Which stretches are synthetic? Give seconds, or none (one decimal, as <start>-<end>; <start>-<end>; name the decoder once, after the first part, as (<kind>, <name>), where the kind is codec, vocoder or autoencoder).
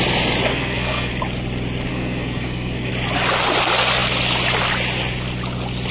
0.5-1.1 (codec, SNAC); 1.9-2.9